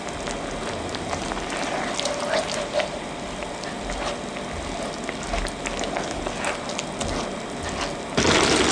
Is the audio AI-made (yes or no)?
no